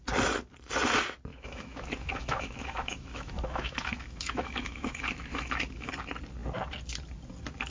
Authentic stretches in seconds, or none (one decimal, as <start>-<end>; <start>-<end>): 0.0-1.3; 5.9-7.7